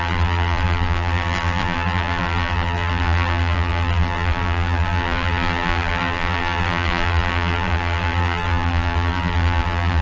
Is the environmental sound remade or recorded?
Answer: remade